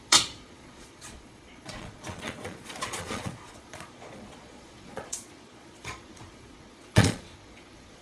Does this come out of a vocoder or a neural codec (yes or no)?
yes